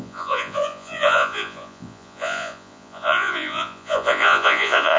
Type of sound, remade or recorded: remade